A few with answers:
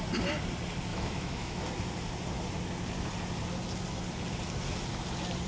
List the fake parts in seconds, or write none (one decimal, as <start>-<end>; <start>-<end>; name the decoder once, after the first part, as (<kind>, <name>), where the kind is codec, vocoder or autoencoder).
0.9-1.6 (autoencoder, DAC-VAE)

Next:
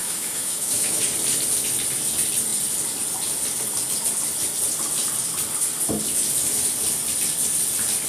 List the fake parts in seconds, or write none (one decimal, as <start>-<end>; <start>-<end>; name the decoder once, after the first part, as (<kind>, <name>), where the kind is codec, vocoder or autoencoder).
0.0-1.0 (autoencoder, DAC-VAE)

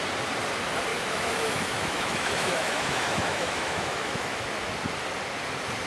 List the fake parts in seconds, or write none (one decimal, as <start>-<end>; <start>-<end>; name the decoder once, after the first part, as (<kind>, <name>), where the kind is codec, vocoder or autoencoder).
0.9-4.4 (autoencoder, DAC-VAE)